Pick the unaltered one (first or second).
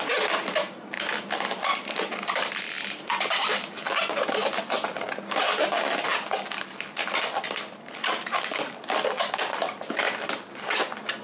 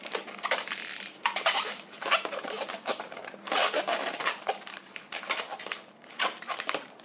first